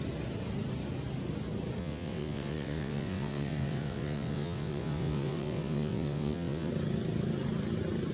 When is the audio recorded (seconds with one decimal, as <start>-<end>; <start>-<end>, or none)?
0.0-1.8; 6.7-8.1